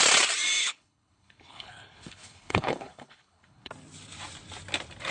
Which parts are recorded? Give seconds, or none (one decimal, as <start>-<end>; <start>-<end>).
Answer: 0.0-0.6; 3.7-5.1